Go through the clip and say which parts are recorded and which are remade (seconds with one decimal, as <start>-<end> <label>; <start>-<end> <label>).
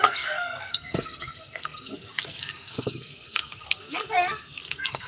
0.0-5.1 remade